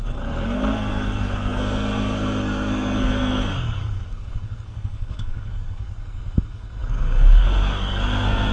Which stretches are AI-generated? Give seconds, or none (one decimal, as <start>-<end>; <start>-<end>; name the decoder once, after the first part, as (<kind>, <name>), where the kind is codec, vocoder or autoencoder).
0.0-8.5 (codec, SNAC)